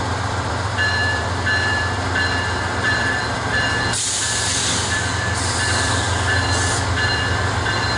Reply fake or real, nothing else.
fake